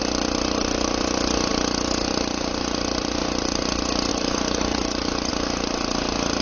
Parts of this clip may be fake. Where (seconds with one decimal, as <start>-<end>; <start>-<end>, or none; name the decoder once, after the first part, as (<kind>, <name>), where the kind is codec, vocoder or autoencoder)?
4.1-5.3 (codec, DAC)